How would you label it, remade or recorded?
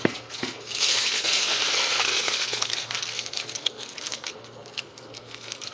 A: remade